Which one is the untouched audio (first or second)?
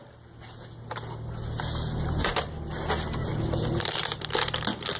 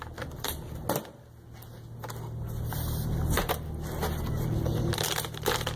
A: second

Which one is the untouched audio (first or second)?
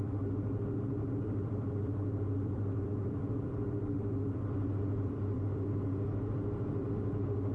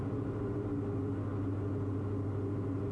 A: second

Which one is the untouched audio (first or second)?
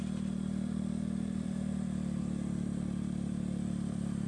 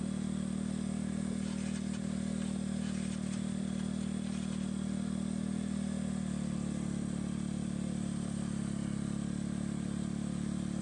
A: second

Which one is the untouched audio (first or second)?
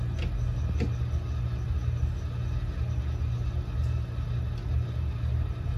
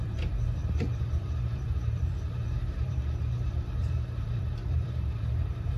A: first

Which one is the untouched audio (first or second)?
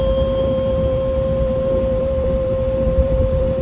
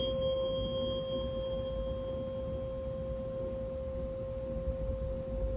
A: second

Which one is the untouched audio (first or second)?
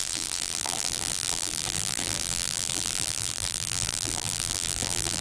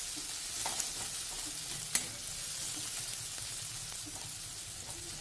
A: second